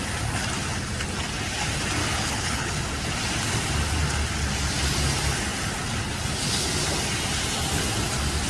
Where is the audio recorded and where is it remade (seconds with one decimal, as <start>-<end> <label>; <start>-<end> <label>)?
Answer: 0.0-2.0 recorded; 2.0-2.8 remade; 2.8-8.5 recorded